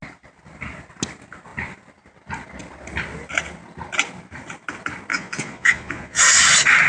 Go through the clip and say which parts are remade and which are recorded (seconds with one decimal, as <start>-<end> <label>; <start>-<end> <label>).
0.0-5.1 recorded; 5.1-6.2 remade; 6.2-6.9 recorded